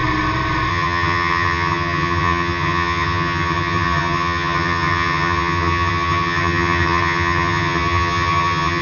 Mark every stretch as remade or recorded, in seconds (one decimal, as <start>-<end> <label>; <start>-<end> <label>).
0.0-0.7 recorded; 0.7-8.8 remade

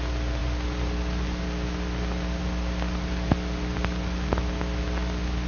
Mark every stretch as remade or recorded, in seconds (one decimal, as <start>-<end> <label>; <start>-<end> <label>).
0.0-5.5 recorded

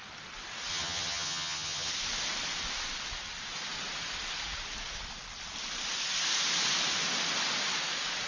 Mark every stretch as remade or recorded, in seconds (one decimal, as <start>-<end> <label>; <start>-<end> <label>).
0.0-0.7 recorded; 0.7-1.9 remade; 1.9-8.3 recorded

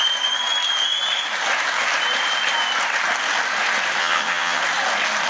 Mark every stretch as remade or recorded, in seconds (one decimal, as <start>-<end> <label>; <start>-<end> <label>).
0.0-4.0 recorded; 4.0-4.6 remade; 4.6-5.3 recorded

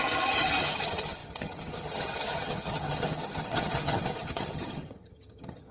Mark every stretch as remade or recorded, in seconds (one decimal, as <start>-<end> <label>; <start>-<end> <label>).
0.0-5.7 remade

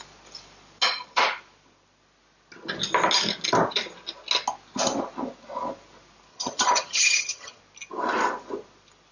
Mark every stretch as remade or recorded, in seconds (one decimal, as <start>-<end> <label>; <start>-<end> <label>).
0.0-6.3 recorded; 6.3-7.6 remade; 7.6-9.1 recorded

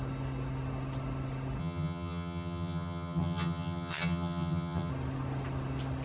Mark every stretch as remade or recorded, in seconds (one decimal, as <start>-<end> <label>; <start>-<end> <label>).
0.0-1.6 recorded; 1.6-4.9 remade; 4.9-6.0 recorded